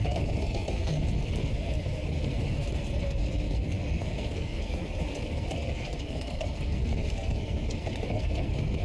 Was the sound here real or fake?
fake